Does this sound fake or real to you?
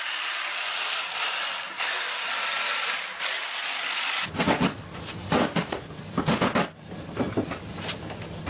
real